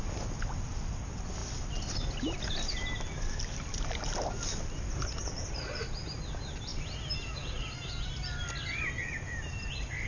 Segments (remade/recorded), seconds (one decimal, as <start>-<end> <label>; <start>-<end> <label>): 0.0-10.1 recorded